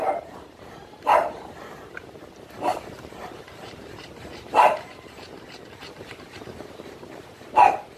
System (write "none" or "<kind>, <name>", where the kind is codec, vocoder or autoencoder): vocoder, BigVGAN v2